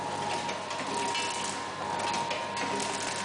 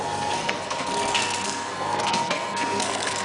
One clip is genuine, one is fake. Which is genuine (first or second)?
first